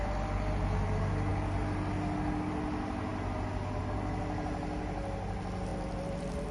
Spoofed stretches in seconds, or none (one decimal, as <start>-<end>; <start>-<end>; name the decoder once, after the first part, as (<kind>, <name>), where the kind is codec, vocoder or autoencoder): none